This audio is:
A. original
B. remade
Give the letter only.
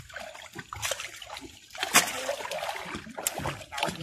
A